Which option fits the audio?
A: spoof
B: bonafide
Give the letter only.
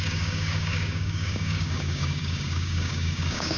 A